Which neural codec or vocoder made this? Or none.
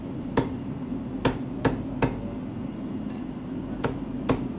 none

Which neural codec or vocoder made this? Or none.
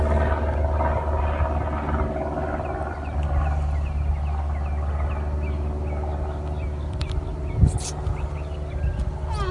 none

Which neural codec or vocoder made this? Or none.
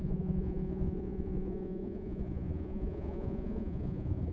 vocoder, Vocos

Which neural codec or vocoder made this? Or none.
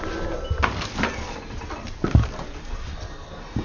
none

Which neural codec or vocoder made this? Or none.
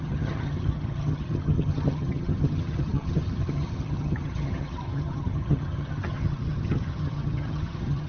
vocoder, HiFi-GAN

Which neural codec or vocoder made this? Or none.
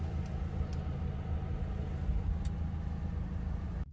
none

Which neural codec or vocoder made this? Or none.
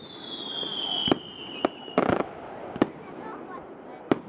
none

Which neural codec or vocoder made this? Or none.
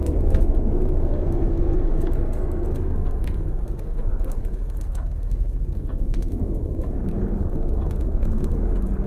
codec, SNAC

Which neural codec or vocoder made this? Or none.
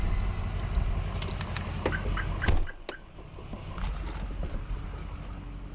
none